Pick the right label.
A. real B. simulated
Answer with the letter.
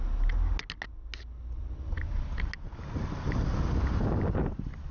A